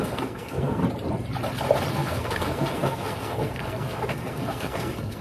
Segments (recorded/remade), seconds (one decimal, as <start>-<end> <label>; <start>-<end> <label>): 0.0-0.8 remade; 0.8-1.9 recorded; 1.9-5.2 remade